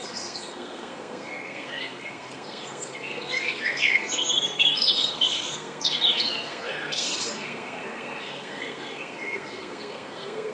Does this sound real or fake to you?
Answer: fake